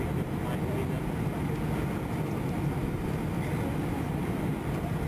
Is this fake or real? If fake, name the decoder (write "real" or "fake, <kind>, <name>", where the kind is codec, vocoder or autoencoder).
real